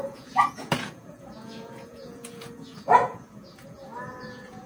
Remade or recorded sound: remade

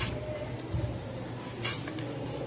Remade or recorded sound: recorded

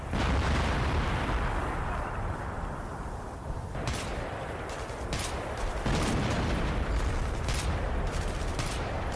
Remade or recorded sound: remade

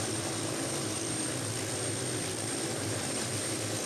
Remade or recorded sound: recorded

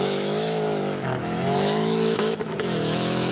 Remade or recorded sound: remade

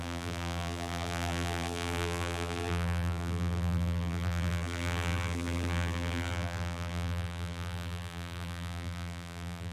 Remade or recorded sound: remade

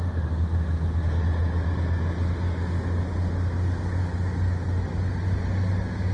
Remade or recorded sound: recorded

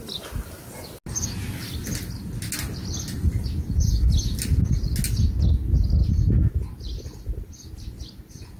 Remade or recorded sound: recorded